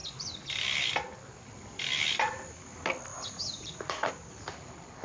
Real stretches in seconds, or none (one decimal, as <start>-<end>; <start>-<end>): 0.0-3.1; 4.1-5.0